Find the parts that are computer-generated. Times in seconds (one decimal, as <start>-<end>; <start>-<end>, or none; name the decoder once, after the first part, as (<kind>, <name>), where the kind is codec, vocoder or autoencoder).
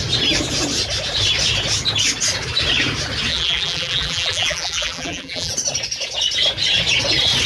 3.3-5.5 (vocoder, BigVGAN v2)